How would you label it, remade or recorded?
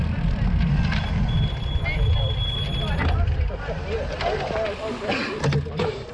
recorded